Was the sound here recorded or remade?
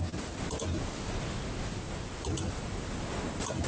recorded